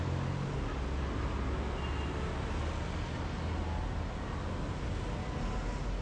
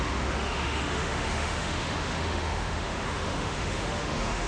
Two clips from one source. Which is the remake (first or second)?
second